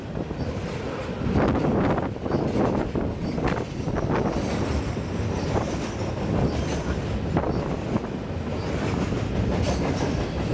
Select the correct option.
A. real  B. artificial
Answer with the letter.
A